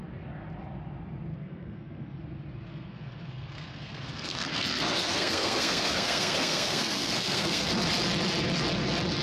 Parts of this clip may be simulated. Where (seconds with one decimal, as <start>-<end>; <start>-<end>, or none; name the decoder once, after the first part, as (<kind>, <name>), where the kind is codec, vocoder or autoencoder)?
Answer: 1.3-2.2 (codec, SNAC); 2.7-7.7